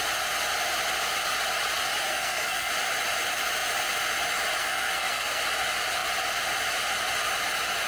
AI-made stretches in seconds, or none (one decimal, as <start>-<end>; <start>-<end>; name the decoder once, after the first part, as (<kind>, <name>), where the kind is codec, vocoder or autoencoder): 2.1-2.7 (codec, SNAC); 4.6-5.4